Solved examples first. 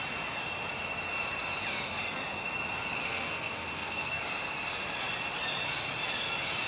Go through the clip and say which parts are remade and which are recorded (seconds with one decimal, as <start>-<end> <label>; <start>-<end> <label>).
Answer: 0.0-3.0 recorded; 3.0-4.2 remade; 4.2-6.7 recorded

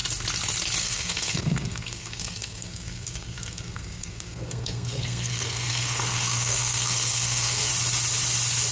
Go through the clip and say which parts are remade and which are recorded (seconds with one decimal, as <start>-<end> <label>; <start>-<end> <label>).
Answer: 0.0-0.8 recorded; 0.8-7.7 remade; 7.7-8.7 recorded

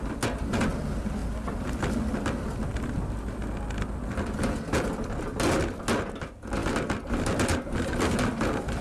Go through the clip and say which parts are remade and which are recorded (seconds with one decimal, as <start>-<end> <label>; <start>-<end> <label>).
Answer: 0.0-8.8 recorded

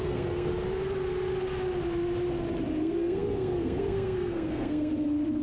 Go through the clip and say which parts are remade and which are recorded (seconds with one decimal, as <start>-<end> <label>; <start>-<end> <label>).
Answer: 0.0-0.5 remade; 0.5-2.8 recorded; 2.8-4.9 remade; 4.9-5.4 recorded